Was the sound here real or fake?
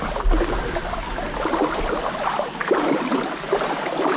real